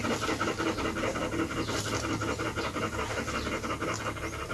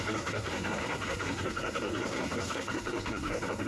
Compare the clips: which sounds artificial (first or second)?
second